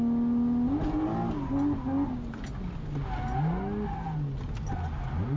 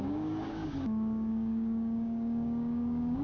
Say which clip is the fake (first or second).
second